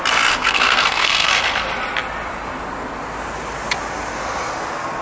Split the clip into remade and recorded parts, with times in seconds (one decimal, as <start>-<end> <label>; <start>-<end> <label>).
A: 0.0-0.4 recorded; 0.4-1.3 remade; 1.3-5.0 recorded